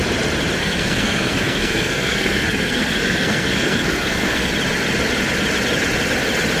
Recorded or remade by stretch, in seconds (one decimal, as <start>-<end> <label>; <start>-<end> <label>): 0.0-0.6 recorded; 0.6-4.5 remade; 4.5-6.6 recorded